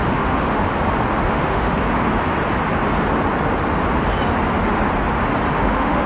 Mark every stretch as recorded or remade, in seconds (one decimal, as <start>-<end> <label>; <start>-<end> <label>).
0.0-0.6 remade; 0.6-1.3 recorded; 1.3-1.8 remade; 1.8-5.5 recorded; 5.5-6.1 remade

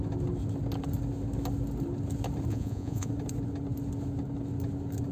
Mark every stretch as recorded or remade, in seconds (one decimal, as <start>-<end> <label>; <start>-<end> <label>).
0.0-2.5 recorded; 2.5-3.1 remade; 3.1-5.1 recorded